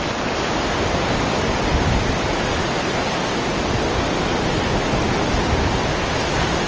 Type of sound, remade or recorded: recorded